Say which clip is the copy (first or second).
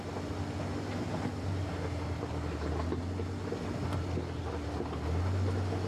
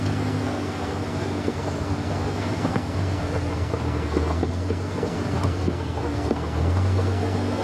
second